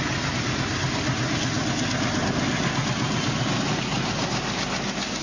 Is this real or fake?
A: real